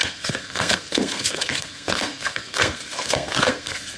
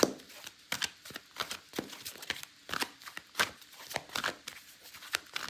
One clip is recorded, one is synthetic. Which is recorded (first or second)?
second